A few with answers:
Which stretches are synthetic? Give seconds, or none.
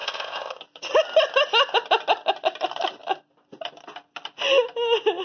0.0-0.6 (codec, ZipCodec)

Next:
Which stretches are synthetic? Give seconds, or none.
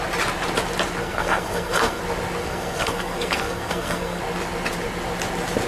1.0-2.0 (codec, SNAC); 2.4-4.2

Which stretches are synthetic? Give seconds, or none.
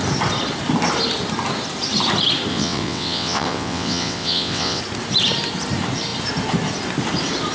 2.5-4.8 (vocoder, WaveNeXt)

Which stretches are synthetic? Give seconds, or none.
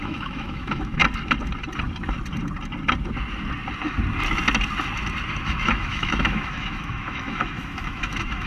0.0-1.0 (autoencoder, DAC-VAE); 5.4-8.5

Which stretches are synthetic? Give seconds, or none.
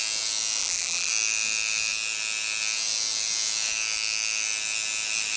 0.6-1.1 (vocoder, BigVGAN v2)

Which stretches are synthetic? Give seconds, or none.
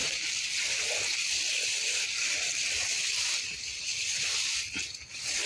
none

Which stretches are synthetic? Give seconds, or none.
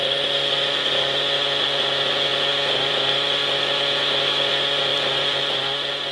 4.9-5.4 (vocoder, BigVGAN v2)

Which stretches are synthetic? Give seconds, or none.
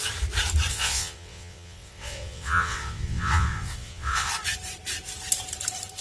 0.7-4.3 (vocoder, WaveNeXt)